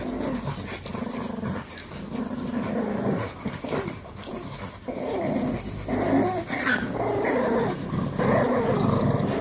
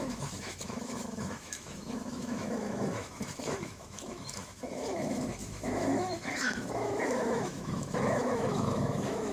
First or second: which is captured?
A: first